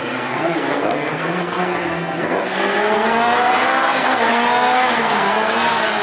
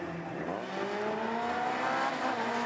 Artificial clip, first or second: first